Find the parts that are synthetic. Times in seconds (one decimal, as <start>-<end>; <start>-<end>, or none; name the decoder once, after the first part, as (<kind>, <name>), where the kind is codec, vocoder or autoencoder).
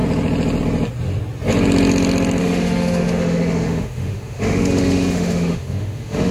2.4-6.3 (autoencoder, DAC-VAE)